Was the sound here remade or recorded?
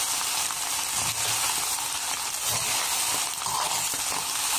recorded